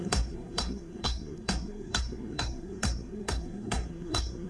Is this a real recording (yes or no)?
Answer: no